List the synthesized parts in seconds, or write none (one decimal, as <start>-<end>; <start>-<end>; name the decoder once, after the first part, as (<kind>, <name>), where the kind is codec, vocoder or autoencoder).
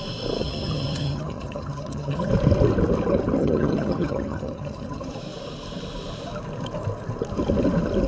0.4-2.3 (vocoder, HiFi-GAN); 3.4-5.1